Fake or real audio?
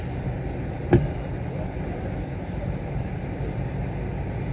real